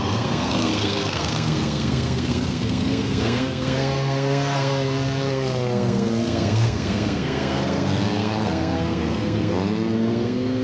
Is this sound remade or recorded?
remade